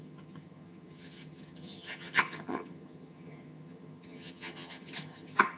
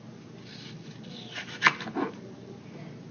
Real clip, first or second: second